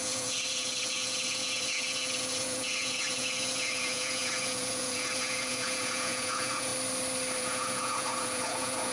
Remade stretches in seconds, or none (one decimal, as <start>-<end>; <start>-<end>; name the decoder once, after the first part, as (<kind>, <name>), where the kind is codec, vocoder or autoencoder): 0.0-6.7 (vocoder, Vocos); 7.4-8.9